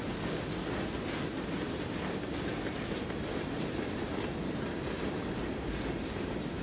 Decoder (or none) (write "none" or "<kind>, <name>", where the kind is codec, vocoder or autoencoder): none